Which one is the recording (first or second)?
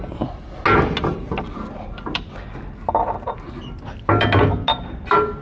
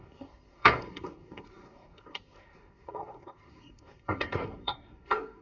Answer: first